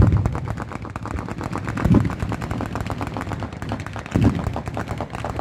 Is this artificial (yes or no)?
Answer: no